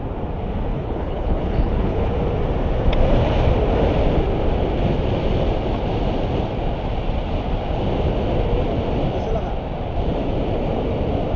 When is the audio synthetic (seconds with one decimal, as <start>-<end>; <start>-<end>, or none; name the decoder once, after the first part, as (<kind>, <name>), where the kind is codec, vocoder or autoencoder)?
0.7-2.1 (codec, HILCodec)